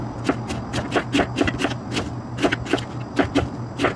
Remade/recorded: recorded